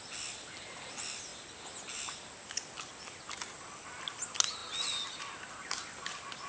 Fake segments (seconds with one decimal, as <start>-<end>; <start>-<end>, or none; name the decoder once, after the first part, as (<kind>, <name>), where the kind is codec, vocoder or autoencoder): none